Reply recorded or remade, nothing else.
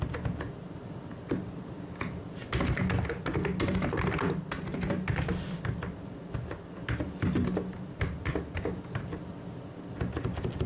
recorded